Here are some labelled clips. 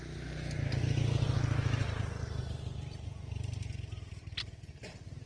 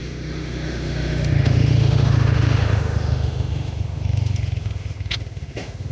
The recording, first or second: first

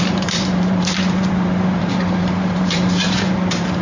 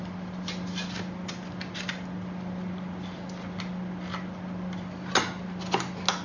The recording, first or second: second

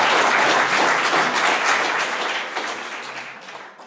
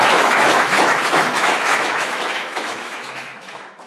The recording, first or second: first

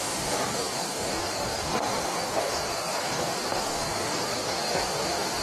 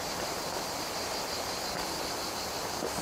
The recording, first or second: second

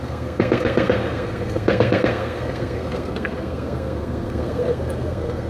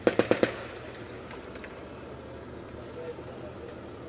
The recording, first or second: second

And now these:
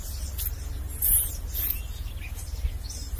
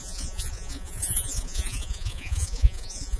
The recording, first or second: first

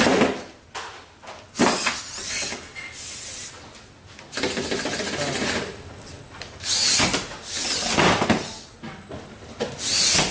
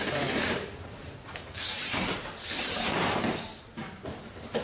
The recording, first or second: first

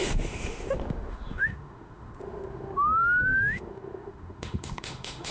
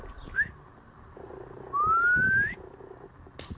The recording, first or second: second